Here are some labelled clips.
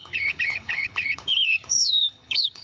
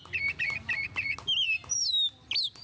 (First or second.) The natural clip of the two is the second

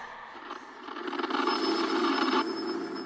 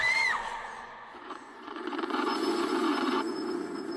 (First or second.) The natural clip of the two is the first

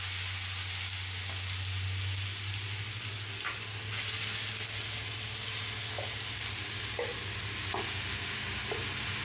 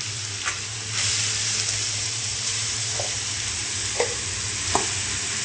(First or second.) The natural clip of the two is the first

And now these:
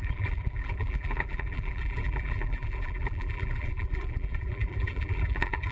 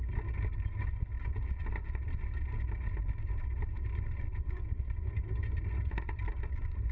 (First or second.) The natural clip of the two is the second